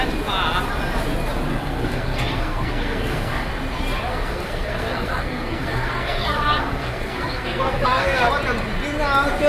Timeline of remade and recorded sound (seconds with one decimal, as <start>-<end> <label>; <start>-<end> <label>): 0.0-1.5 recorded; 1.5-3.5 remade; 3.5-4.1 recorded; 4.1-8.3 remade; 8.3-9.5 recorded